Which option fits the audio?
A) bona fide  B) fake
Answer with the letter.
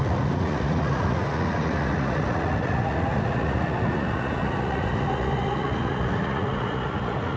B